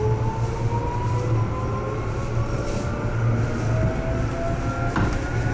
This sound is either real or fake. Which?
real